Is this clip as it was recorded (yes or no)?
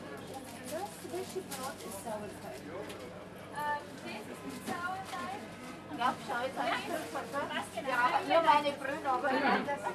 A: yes